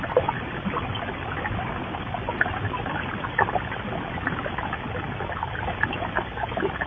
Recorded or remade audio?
recorded